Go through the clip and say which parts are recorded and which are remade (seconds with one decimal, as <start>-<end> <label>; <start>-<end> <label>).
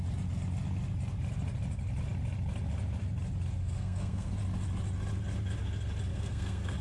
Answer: 0.0-3.6 recorded; 3.6-4.3 remade; 4.3-6.1 recorded; 6.1-6.8 remade